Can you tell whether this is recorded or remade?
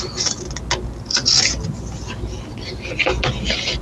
recorded